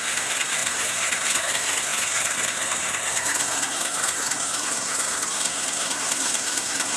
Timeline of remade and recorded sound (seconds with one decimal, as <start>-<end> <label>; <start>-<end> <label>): 0.0-7.0 remade